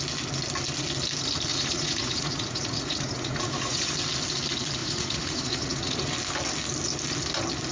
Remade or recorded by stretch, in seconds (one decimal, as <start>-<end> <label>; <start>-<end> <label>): 0.0-1.5 recorded; 1.5-3.9 remade; 3.9-4.8 recorded; 4.8-6.0 remade; 6.0-7.7 recorded